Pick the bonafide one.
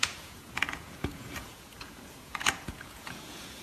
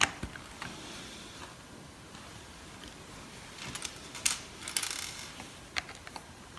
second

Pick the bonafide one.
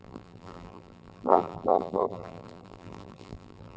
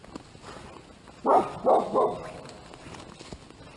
second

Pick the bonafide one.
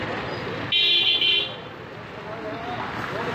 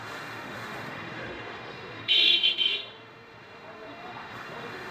first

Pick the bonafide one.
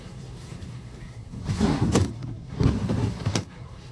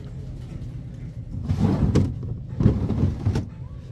second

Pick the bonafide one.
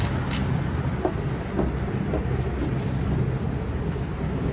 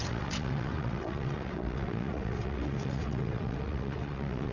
first